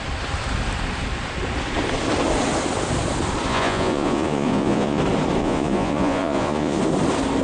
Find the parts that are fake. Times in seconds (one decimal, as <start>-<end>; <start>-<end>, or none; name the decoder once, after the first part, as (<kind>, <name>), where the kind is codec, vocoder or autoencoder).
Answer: 3.5-5.0 (vocoder, Vocos); 5.4-6.8